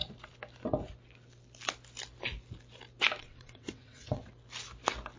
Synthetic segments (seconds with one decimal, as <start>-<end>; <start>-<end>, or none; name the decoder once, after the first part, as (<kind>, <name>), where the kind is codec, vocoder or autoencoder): 3.2-4.3 (vocoder, WaveNeXt)